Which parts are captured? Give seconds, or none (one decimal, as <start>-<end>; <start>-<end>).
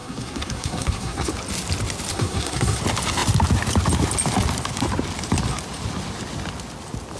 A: 1.3-2.1; 2.8-7.2